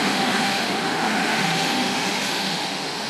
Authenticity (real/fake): fake